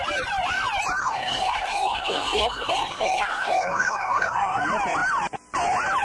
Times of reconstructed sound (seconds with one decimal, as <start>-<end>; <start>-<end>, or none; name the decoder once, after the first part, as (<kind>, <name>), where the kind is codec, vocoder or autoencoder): 1.0-4.6 (codec, SNAC)